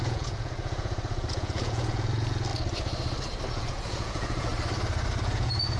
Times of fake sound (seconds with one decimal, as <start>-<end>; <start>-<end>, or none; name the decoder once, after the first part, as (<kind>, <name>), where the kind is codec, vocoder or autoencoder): 0.0-2.5 (vocoder, Vocos); 3.5-4.5; 5.2-5.8